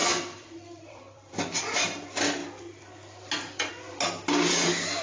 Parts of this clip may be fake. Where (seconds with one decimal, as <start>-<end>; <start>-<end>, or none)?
0.0-1.3